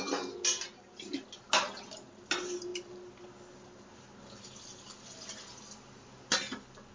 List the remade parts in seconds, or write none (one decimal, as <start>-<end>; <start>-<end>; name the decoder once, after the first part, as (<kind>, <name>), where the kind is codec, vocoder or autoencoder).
none